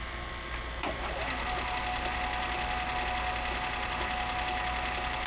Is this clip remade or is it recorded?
recorded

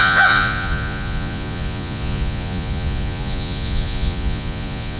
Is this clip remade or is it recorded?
remade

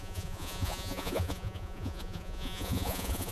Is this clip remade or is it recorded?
remade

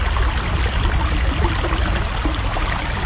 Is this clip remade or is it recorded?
recorded